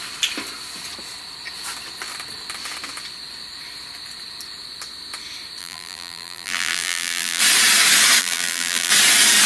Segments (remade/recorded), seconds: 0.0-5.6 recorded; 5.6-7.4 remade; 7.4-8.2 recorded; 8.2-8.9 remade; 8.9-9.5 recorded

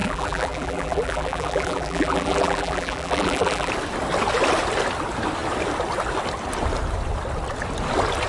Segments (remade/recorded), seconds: 0.0-3.7 remade; 3.7-8.3 recorded

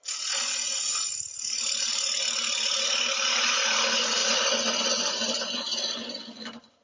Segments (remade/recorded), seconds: 0.0-6.8 recorded

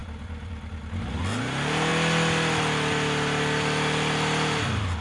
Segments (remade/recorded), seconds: 0.0-5.0 recorded

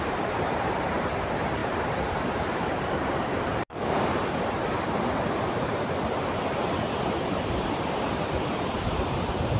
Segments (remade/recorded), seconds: 0.0-9.6 remade

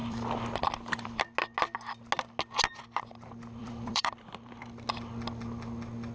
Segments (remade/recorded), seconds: 0.0-1.2 remade; 1.2-3.6 recorded; 3.6-4.7 remade; 4.7-6.1 recorded